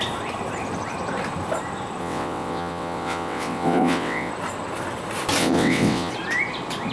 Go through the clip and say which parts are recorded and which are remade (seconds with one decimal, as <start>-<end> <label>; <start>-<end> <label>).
0.0-2.0 recorded; 2.0-4.3 remade; 4.3-5.4 recorded; 5.4-6.1 remade; 6.1-6.9 recorded

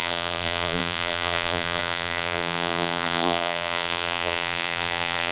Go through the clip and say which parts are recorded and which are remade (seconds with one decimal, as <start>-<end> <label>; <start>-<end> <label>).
0.0-5.3 remade